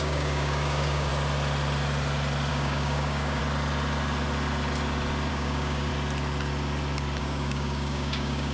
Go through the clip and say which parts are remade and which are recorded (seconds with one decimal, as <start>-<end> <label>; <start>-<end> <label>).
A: 0.0-1.1 remade; 1.1-2.5 recorded; 2.5-3.4 remade; 3.4-5.3 recorded; 5.3-5.9 remade; 5.9-7.2 recorded; 7.2-8.5 remade

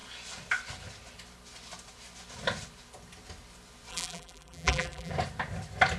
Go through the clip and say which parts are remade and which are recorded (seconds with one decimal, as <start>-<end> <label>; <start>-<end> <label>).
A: 0.0-3.9 recorded; 3.9-5.1 remade; 5.1-6.0 recorded